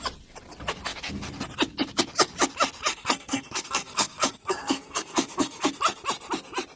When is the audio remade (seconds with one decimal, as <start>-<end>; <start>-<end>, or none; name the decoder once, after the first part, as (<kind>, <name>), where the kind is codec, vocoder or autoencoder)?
2.9-5.7 (codec, SNAC)